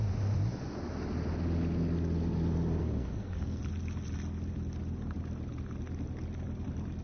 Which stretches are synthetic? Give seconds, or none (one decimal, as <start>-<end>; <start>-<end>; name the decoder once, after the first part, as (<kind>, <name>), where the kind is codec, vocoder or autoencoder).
2.8-3.6 (codec, SNAC)